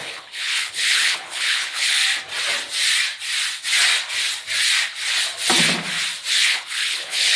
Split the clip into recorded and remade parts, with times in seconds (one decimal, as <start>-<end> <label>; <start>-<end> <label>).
0.0-2.0 remade; 2.0-6.3 recorded; 6.3-7.4 remade